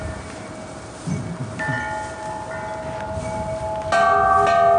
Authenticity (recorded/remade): recorded